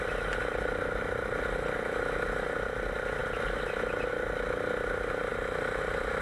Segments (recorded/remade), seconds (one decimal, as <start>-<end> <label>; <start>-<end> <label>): 0.0-6.2 recorded

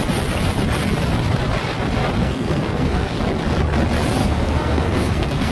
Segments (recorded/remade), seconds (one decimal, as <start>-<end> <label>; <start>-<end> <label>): 0.0-2.2 recorded; 2.2-3.2 remade; 3.2-4.2 recorded; 4.2-5.5 remade

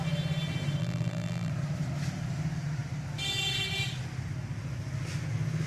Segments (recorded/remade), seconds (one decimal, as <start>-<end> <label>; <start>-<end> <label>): 0.0-0.8 recorded; 0.8-1.5 remade; 1.5-5.7 recorded

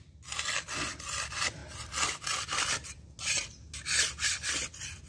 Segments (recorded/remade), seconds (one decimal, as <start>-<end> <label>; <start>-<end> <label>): 0.0-5.1 recorded

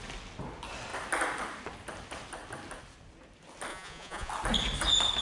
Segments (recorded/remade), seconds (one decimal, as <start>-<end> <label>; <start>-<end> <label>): 0.0-3.7 recorded; 3.7-4.3 remade; 4.3-5.2 recorded

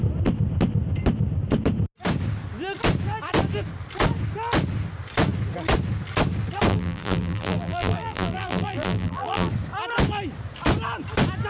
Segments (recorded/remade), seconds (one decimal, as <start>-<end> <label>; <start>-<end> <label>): 0.0-6.7 recorded; 6.7-9.5 remade; 9.5-11.5 recorded